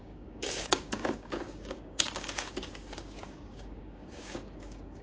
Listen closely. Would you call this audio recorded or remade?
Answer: remade